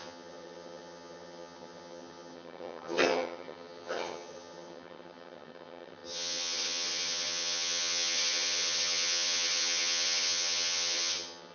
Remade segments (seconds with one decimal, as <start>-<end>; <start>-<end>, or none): 0.0-11.5